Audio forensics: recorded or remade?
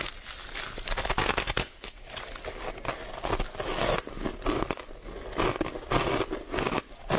recorded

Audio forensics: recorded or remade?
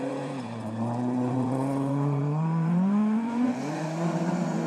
remade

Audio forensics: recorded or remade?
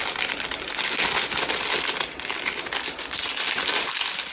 recorded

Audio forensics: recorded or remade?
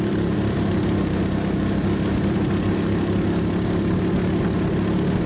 recorded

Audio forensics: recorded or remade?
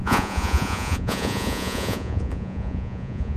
remade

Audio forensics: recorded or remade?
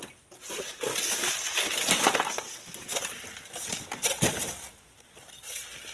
recorded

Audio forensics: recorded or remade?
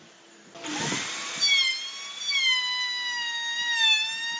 recorded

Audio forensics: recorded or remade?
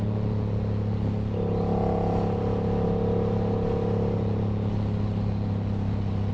recorded